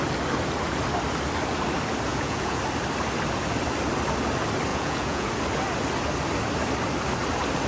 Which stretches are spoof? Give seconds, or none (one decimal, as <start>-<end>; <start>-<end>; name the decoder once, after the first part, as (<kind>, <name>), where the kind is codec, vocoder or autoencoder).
2.1-2.6 (vocoder, Vocos); 4.7-5.3